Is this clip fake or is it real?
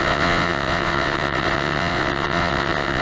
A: fake